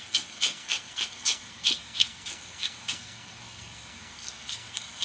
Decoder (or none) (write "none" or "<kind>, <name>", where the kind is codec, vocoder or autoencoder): codec, SNAC